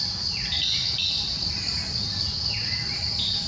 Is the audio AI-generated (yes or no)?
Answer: no